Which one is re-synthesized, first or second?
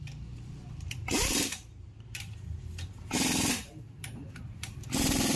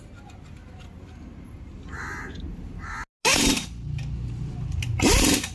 first